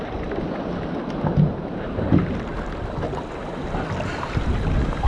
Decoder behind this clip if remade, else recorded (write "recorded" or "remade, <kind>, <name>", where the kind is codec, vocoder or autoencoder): recorded